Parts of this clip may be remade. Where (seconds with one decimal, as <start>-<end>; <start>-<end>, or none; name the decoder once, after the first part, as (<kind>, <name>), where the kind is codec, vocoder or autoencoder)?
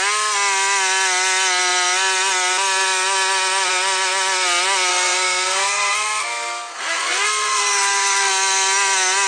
4.9-8.3 (codec, SNAC)